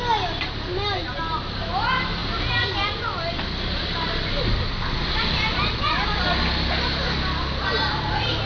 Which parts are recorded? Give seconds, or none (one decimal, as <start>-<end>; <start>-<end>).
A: 0.0-8.5